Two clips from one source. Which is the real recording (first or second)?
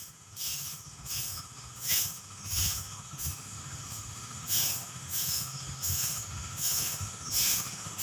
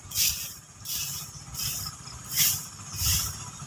second